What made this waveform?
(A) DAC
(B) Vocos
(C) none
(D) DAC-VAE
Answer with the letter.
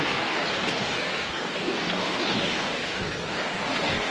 A